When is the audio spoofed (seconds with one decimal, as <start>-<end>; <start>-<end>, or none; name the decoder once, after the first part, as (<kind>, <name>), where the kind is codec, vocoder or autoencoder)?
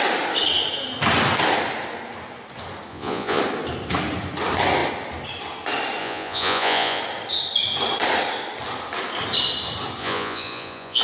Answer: 2.9-3.4 (vocoder, Vocos); 6.0-7.0; 10.0-11.0